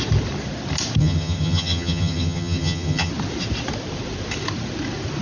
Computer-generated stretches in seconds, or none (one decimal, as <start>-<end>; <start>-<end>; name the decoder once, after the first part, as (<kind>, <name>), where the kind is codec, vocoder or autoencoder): 1.0-3.1 (vocoder, HiFi-GAN)